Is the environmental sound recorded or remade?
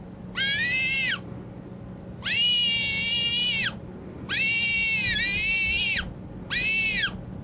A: recorded